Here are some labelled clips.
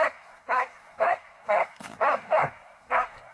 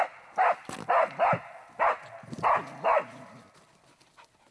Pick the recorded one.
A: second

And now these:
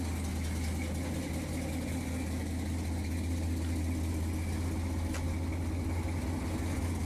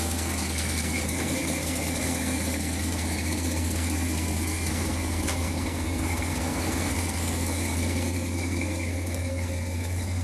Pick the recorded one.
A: first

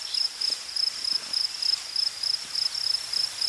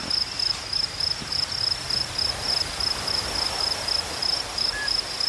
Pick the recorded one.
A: second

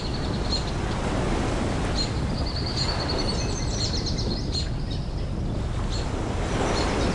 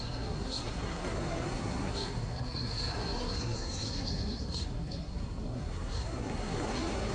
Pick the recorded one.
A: first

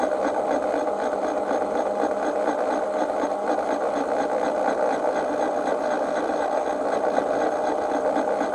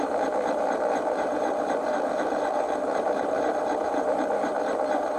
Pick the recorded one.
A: first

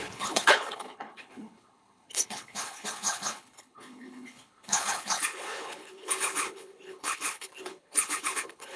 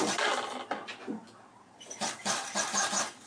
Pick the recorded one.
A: second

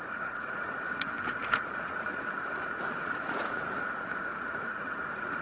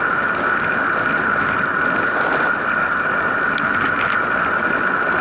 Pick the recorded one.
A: second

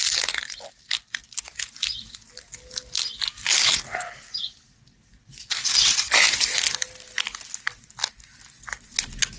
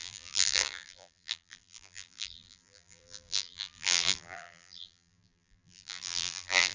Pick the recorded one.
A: first